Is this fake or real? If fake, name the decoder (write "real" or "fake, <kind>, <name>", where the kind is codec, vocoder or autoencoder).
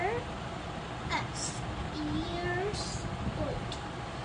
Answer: real